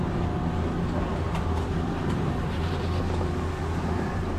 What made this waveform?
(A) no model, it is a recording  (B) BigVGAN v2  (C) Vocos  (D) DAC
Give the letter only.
B